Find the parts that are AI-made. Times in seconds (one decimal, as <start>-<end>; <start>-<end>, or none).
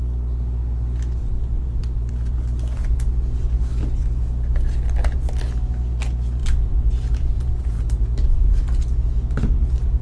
1.2-2.1; 6.4-8.6